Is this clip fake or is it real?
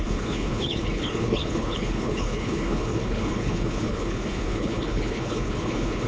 fake